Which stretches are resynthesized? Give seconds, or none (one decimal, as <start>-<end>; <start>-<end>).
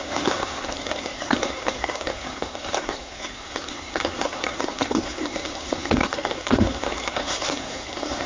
0.0-8.3